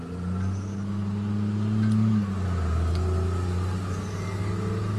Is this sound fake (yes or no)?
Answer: no